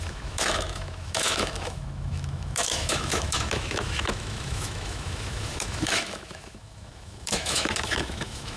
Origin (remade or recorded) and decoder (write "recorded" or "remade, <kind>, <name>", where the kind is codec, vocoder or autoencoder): remade, autoencoder, DAC-VAE